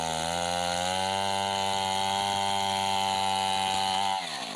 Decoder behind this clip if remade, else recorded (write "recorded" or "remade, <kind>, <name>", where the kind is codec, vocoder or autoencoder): recorded